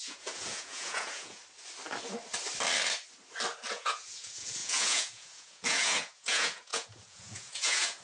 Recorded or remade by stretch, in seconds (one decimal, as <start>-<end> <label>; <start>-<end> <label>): 0.0-1.4 remade; 1.4-3.7 recorded; 3.7-8.0 remade